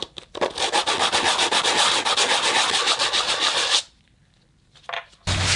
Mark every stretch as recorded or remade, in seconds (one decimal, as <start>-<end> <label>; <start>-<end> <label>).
0.0-5.6 recorded